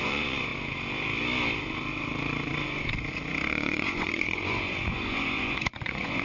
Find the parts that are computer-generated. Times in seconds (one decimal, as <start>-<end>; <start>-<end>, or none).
0.0-0.5; 3.5-6.2